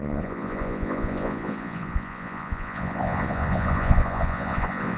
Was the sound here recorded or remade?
remade